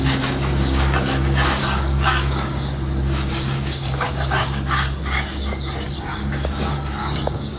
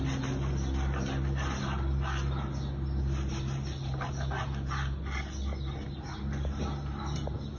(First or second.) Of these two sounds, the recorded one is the second